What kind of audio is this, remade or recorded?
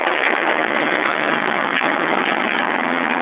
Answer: remade